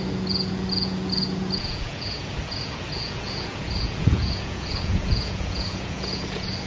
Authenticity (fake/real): fake